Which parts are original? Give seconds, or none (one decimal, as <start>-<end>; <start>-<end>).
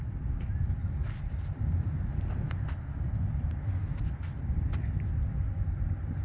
0.0-0.8; 1.9-6.2